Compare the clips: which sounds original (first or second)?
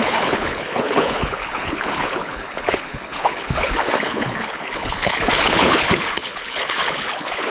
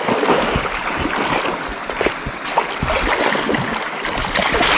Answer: second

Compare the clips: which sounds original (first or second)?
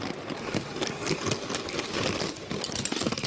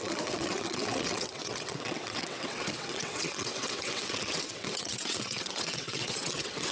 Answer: first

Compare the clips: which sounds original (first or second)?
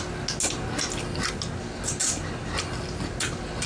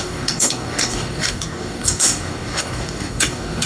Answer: first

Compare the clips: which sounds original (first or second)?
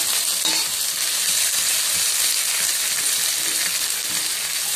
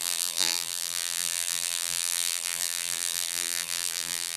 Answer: first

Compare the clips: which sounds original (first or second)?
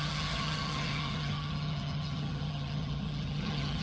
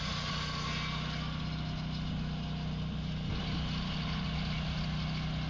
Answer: second